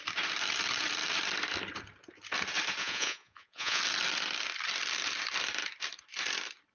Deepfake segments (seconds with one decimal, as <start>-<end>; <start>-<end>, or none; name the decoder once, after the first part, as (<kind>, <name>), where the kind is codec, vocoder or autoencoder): 2.8-3.8 (vocoder, Vocos)